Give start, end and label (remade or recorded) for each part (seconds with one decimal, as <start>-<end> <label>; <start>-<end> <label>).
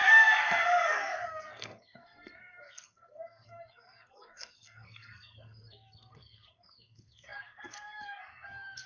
0.0-8.9 remade